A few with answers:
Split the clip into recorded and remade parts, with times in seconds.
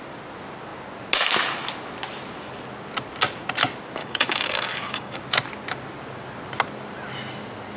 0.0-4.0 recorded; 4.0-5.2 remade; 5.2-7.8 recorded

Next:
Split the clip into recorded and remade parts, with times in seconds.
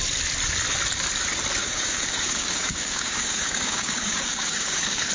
0.0-1.6 recorded; 1.6-5.1 remade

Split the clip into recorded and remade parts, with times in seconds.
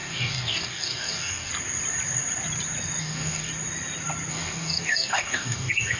0.0-1.5 remade; 1.5-3.0 recorded; 3.0-3.5 remade; 3.5-4.3 recorded; 4.3-6.0 remade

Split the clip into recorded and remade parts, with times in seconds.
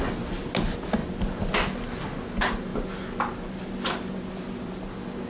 0.0-5.3 recorded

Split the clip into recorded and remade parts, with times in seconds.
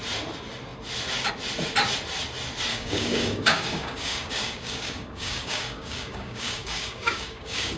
0.0-2.7 recorded; 2.7-7.8 remade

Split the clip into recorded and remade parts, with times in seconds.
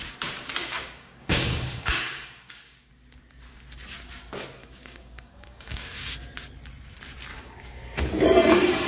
0.0-0.6 recorded; 0.6-2.9 remade; 2.9-4.6 recorded; 4.6-6.1 remade; 6.1-7.3 recorded; 7.3-8.0 remade; 8.0-8.9 recorded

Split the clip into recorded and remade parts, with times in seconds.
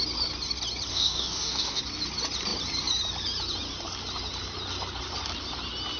0.0-0.9 recorded; 0.9-1.8 remade; 1.8-6.0 recorded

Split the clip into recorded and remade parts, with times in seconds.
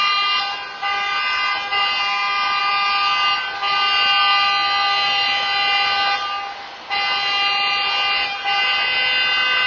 0.0-9.7 recorded